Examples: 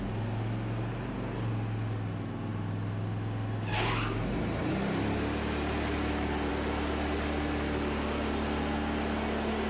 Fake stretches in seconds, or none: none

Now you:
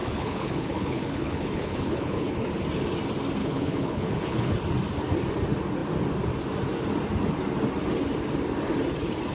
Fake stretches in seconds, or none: 0.0-2.5 (codec, HILCodec); 3.4-4.5

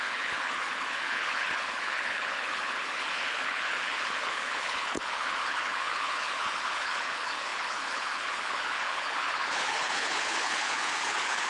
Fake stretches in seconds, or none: 0.0-11.5 (codec, HILCodec)

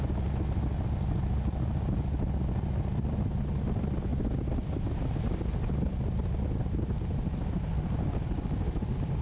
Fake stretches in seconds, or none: none

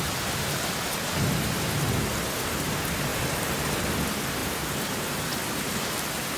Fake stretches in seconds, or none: 3.1-3.6 (vocoder, BigVGAN v2); 4.4-5.3

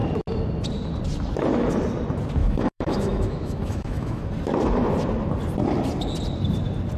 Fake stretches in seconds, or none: 2.4-4.3 (autoencoder, DAC-VAE)

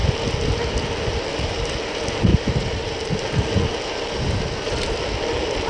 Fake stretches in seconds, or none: 2.3-3.2 (vocoder, BigVGAN v2); 3.7-5.7